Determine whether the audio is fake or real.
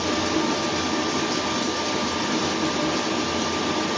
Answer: real